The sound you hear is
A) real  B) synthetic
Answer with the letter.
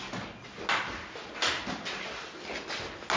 A